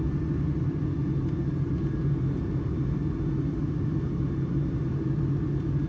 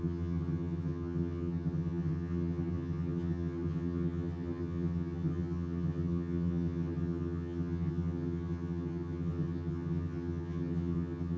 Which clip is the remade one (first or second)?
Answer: second